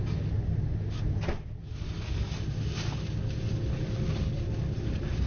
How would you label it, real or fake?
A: real